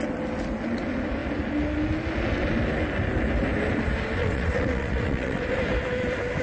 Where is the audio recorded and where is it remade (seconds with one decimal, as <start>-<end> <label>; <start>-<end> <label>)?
0.0-4.2 recorded; 4.2-5.4 remade; 5.4-6.4 recorded